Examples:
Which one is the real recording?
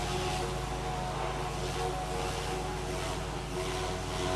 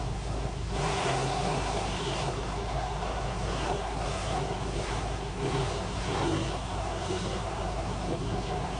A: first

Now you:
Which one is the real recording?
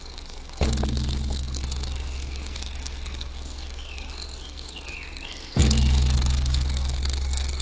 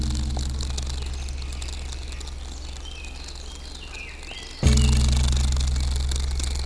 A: second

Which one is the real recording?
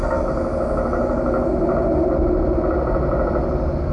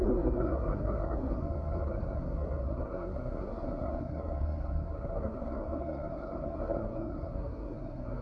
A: first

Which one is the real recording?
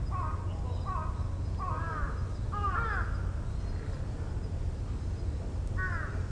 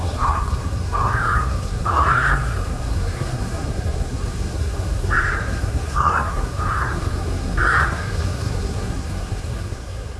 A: first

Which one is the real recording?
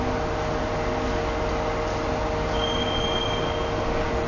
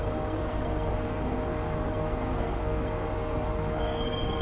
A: first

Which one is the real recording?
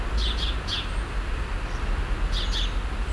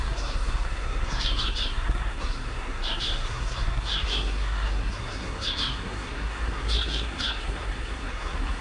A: first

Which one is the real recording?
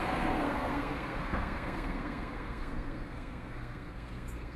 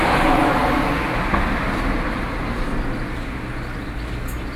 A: second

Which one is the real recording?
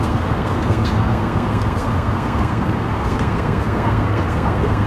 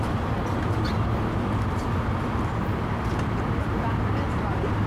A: second